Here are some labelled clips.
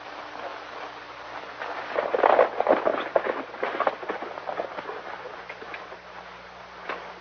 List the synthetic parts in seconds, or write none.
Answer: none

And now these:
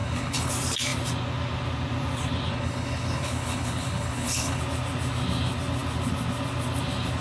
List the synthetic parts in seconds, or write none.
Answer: 0.0-0.5 (codec, HILCodec); 2.5-4.6

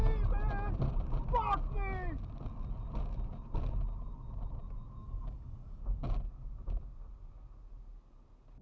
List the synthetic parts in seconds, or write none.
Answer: 5.0-5.8 (codec, DAC)

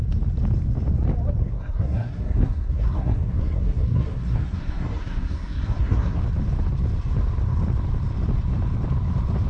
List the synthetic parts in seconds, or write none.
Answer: 1.4-6.2 (codec, SNAC)

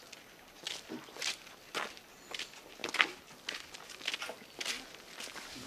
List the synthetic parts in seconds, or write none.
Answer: none

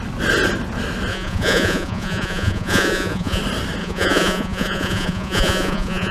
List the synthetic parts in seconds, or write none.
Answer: 1.1-3.4 (vocoder, Vocos); 3.8-6.1

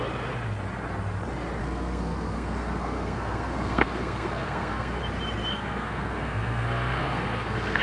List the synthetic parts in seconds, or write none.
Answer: 1.6-5.0 (codec, SNAC); 5.5-7.8

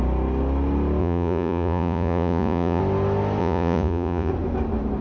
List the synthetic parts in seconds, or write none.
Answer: 1.0-2.8 (vocoder, Vocos); 3.4-4.3